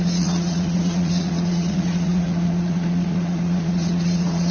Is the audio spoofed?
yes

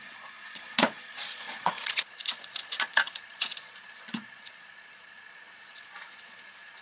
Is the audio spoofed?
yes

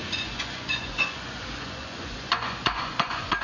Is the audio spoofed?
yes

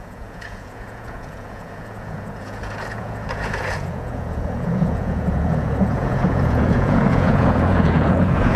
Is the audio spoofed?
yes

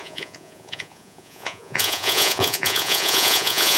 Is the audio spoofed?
yes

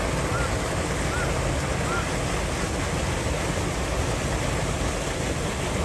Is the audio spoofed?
no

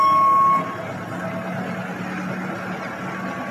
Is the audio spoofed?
no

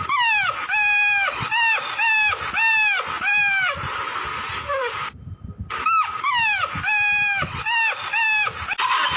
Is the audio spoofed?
no